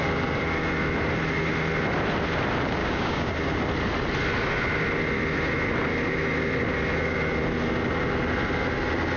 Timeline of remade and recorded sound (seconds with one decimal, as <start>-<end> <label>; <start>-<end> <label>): 0.0-2.8 recorded; 2.8-3.3 remade; 3.3-9.2 recorded